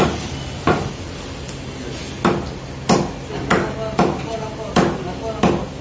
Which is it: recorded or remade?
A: recorded